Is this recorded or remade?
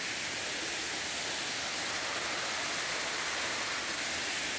recorded